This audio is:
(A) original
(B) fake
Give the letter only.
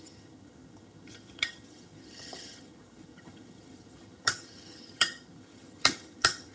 B